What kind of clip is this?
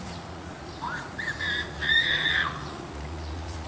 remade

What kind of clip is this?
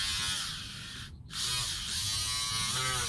recorded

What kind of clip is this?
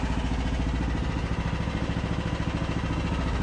recorded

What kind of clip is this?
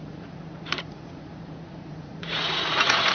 remade